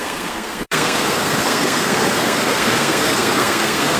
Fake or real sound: fake